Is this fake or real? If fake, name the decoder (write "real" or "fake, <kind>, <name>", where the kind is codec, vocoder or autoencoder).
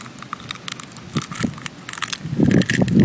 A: real